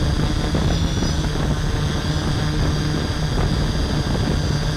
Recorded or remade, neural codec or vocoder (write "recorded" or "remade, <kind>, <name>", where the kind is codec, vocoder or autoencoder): recorded